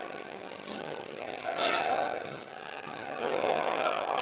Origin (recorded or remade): remade